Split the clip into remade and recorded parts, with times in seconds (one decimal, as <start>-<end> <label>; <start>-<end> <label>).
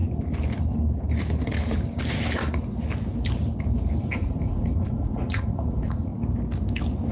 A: 0.0-4.0 recorded; 4.0-6.1 remade; 6.1-7.1 recorded